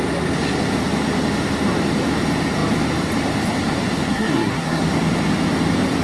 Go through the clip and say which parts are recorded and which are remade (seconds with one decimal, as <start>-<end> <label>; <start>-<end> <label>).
0.0-4.1 recorded; 4.1-4.8 remade; 4.8-6.0 recorded